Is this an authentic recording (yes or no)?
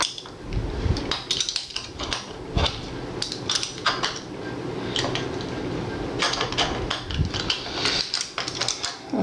yes